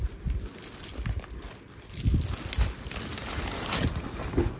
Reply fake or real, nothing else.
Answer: real